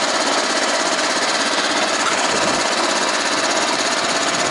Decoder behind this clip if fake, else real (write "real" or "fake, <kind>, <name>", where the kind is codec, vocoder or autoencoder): fake, vocoder, Vocos